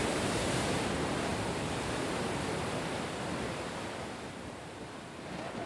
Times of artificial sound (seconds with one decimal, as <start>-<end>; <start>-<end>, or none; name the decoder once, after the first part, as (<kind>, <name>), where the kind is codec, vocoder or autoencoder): 0.0-0.9 (vocoder, BigVGAN v2)

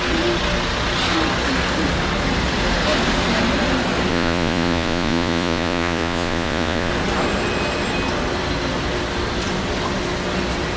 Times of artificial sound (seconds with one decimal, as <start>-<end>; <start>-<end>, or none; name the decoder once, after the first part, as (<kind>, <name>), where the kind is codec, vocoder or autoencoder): 4.1-6.9 (vocoder, Vocos)

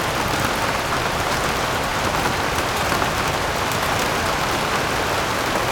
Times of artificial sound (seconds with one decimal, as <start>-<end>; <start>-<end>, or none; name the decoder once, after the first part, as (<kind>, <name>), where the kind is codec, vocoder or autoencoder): none

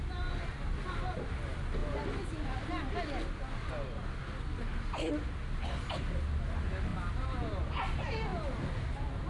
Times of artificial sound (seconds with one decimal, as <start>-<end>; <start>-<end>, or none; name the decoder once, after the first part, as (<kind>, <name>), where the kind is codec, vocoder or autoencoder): 6.9-7.6 (vocoder, BigVGAN v2)

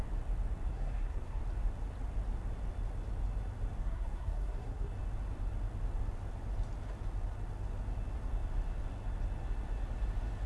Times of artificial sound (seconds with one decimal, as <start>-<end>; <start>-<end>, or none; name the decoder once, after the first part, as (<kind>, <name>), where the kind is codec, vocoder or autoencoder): 0.7-1.4 (codec, SNAC); 3.8-4.9

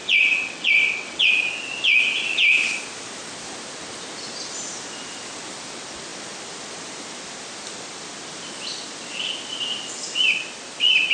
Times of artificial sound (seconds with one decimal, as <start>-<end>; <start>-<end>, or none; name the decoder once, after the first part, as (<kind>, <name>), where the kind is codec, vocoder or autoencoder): 0.0-1.3 (vocoder, WaveNeXt)